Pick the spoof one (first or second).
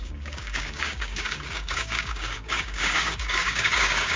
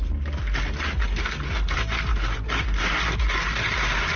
first